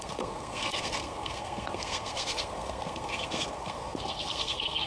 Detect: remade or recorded remade